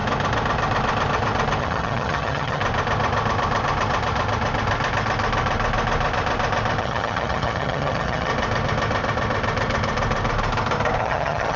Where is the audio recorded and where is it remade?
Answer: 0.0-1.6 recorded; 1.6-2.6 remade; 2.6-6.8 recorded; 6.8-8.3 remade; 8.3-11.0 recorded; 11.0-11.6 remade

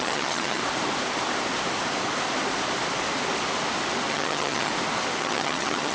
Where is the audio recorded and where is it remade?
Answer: 0.0-0.6 remade; 0.6-4.1 recorded; 4.1-4.7 remade; 4.7-5.2 recorded; 5.2-5.9 remade

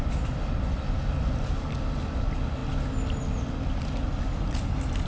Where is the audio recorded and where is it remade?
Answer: 0.0-5.1 recorded

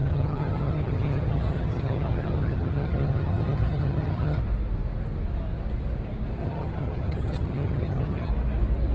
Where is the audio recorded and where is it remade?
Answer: 0.0-4.4 remade; 4.4-6.4 recorded; 6.4-8.3 remade; 8.3-8.9 recorded

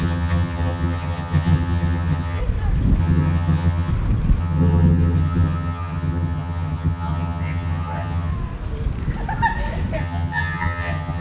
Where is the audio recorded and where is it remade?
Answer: 0.0-2.4 remade; 2.4-3.0 recorded; 3.0-3.9 remade; 3.9-4.4 recorded; 4.4-8.3 remade; 8.3-10.0 recorded; 10.0-11.2 remade

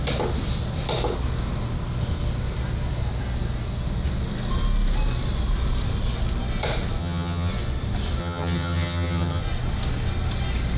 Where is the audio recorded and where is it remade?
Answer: 0.0-7.0 recorded; 7.0-7.5 remade; 7.5-8.2 recorded; 8.2-9.4 remade; 9.4-10.8 recorded

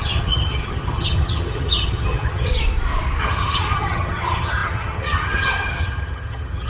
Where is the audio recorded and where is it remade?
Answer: 0.0-2.5 remade; 2.5-3.2 recorded; 3.2-6.7 remade

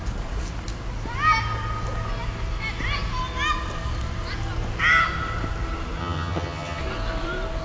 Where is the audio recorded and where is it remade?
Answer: 0.0-6.0 recorded; 6.0-6.8 remade; 6.8-7.6 recorded